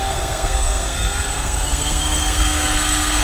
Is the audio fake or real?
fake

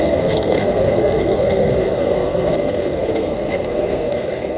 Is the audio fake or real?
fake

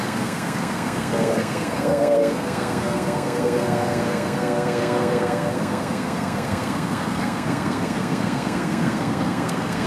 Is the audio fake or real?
fake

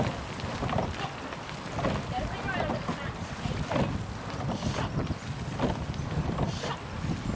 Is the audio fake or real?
real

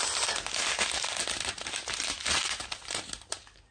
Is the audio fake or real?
real